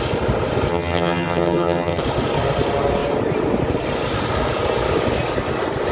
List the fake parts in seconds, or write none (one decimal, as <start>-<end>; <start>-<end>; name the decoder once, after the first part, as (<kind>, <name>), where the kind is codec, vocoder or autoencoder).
0.7-2.0 (vocoder, HiFi-GAN)